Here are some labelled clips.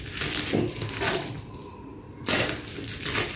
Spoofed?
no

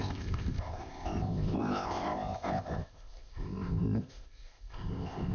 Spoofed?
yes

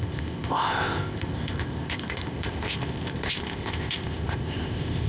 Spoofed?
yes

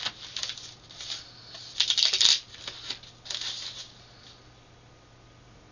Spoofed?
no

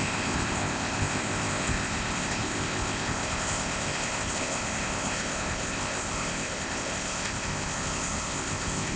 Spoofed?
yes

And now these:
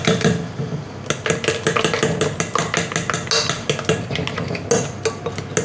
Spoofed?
no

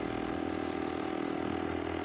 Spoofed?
no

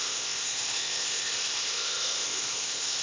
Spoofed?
yes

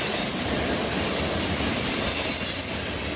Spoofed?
no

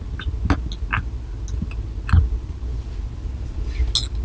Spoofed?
no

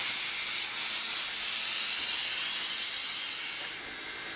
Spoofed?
no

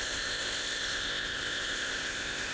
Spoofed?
yes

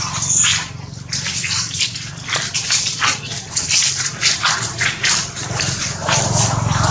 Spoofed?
no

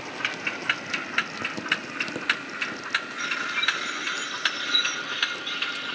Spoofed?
no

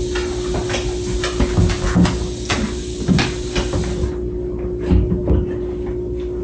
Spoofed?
no